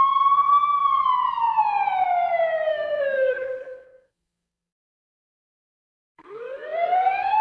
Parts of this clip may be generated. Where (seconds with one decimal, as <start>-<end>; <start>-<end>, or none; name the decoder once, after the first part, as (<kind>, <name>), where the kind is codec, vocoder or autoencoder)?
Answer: 2.7-7.4 (codec, SNAC)